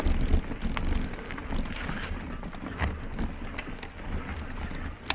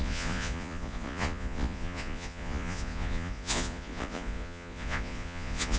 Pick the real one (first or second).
first